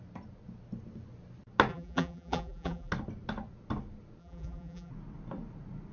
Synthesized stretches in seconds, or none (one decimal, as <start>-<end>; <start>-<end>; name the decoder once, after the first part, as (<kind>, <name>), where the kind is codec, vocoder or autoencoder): 1.7-2.9 (vocoder, BigVGAN v2); 4.2-4.9